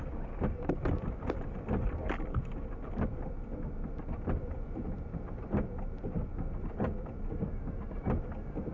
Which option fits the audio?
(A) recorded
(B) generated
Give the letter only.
B